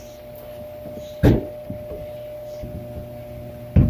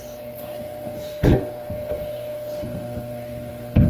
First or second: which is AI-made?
second